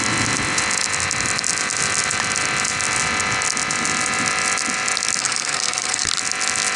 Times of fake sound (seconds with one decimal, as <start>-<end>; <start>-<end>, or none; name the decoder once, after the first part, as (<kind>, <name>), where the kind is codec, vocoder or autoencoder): 5.2-6.1 (codec, SNAC)